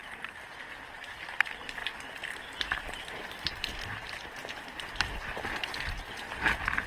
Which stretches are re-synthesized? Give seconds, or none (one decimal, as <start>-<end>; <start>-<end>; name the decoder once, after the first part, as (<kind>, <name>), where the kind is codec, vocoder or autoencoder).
none